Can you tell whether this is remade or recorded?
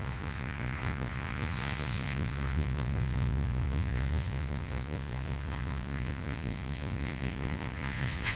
remade